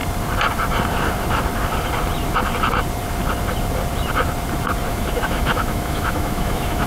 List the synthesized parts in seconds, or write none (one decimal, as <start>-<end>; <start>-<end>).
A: 4.9-6.9